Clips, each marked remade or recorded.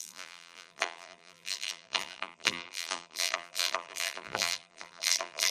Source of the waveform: remade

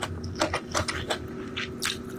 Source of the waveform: recorded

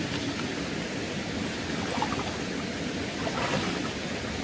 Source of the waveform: recorded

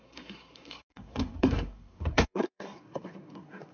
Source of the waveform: remade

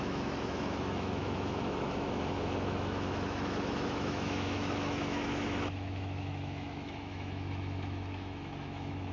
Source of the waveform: remade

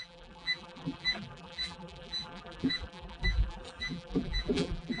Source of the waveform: remade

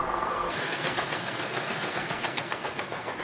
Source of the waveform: remade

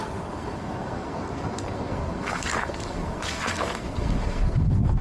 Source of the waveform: remade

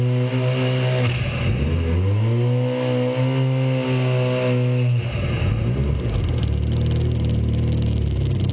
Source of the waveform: recorded